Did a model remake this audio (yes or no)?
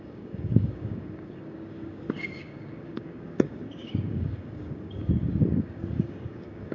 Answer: yes